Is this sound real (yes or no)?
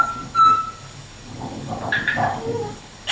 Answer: no